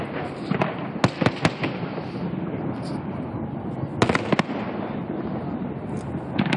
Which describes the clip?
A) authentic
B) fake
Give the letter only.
A